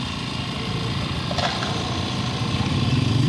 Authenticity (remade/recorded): recorded